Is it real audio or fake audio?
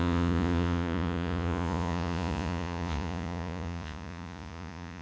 fake